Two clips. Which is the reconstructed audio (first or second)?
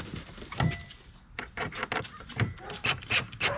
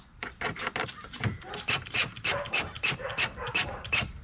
second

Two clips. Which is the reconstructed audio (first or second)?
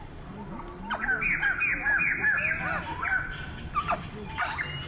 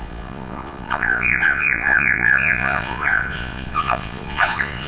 second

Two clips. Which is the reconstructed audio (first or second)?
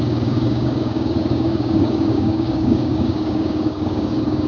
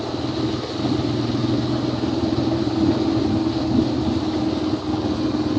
first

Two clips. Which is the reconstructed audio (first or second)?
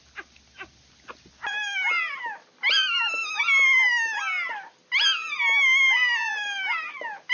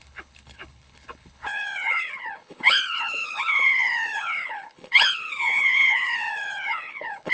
second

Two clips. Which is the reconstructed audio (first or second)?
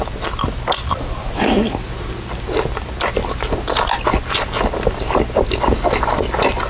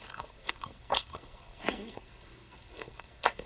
second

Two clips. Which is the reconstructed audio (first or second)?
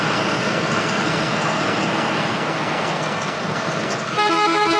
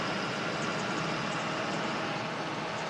first